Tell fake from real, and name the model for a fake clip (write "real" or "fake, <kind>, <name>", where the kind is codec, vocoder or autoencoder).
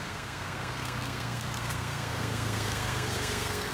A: fake, codec, SNAC